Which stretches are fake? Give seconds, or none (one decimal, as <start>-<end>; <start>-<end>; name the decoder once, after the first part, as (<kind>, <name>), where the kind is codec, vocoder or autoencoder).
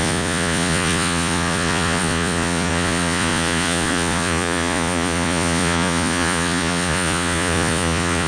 0.0-8.3 (vocoder, Vocos)